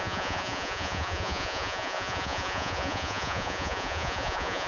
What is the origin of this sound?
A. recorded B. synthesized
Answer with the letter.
B